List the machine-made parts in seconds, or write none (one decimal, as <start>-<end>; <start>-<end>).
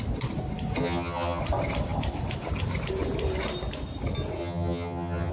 0.8-1.4; 4.4-5.3